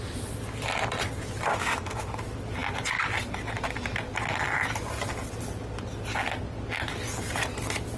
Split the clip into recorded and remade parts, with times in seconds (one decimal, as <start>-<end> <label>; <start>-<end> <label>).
0.0-1.5 recorded; 1.5-2.2 remade; 2.2-8.0 recorded